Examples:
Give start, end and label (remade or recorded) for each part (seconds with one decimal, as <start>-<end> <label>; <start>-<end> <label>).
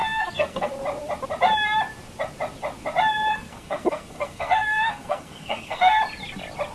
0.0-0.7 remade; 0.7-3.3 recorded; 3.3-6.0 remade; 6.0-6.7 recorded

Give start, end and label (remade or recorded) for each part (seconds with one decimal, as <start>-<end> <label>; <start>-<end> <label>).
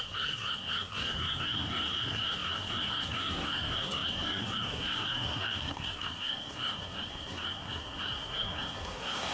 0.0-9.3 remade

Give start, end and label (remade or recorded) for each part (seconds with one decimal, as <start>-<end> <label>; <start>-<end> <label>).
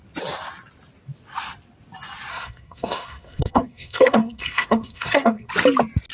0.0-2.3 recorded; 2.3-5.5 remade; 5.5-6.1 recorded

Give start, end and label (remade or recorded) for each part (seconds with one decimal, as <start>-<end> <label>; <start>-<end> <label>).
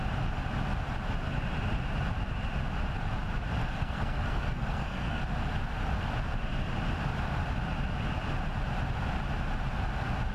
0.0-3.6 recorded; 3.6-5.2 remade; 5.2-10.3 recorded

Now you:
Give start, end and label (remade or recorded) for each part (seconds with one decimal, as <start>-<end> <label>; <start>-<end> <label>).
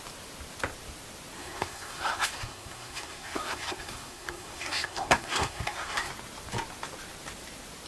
0.0-1.4 recorded; 1.4-6.1 remade; 6.1-7.9 recorded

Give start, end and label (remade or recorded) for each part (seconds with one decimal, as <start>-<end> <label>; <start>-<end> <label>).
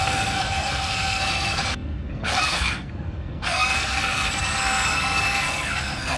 0.0-6.2 remade